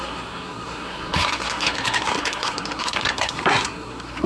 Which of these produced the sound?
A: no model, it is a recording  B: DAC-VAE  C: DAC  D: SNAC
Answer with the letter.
D